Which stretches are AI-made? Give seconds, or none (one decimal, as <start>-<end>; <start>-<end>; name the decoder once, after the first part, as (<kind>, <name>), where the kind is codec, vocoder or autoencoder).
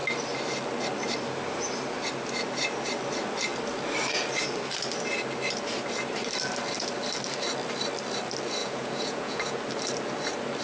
8.6-9.6 (vocoder, Vocos)